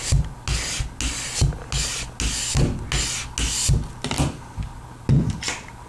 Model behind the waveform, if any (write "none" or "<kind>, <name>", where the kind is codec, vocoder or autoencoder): none